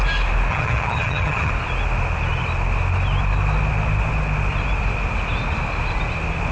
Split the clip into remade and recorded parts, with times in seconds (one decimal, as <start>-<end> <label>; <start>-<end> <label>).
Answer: 0.0-0.5 recorded; 0.5-1.5 remade; 1.5-6.5 recorded